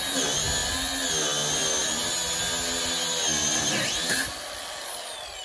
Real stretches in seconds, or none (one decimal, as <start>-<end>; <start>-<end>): 0.0-5.4